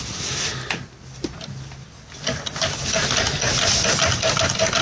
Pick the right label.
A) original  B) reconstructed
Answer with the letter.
A